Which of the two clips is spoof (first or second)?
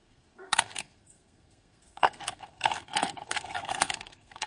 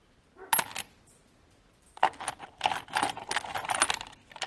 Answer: first